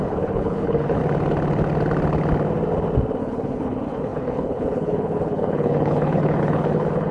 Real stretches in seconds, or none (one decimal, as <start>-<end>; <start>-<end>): 1.0-3.2